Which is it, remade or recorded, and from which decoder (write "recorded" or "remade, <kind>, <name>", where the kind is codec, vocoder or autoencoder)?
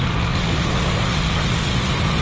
recorded